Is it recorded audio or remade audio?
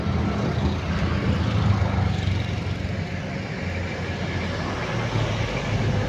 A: recorded